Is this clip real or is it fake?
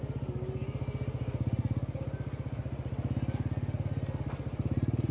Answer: real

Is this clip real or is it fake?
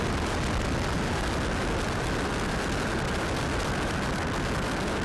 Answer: real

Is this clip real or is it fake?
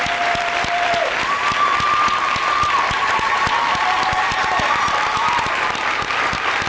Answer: fake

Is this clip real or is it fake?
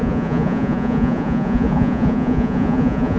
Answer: fake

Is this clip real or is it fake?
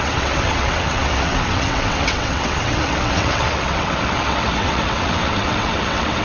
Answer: fake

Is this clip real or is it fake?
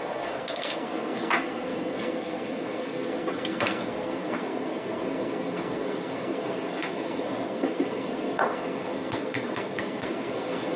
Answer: fake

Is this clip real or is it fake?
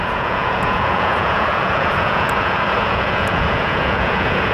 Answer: fake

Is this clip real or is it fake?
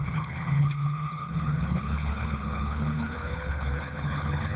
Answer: fake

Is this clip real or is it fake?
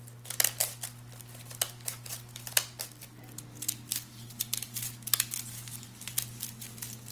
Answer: real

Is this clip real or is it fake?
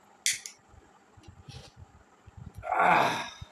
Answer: real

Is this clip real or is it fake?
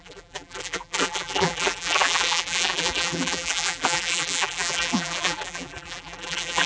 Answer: fake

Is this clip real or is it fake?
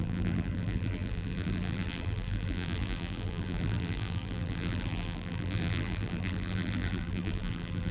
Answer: fake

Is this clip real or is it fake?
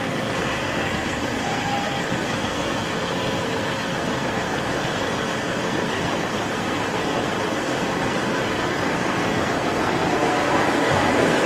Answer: fake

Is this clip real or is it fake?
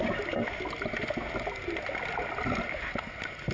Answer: real